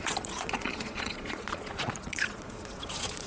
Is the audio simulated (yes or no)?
yes